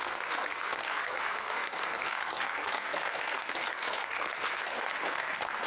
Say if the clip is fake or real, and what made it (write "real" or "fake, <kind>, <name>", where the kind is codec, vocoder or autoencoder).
fake, codec, SNAC